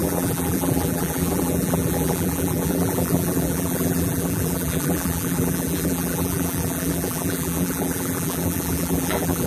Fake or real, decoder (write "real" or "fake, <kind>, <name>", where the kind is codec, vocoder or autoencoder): fake, vocoder, BigVGAN v2